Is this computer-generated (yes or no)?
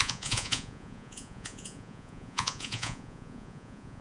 yes